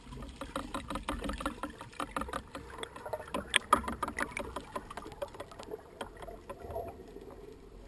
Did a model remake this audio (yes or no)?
no